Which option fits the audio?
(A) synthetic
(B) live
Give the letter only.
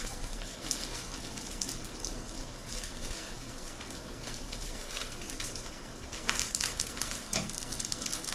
A